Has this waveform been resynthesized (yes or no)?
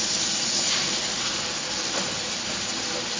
no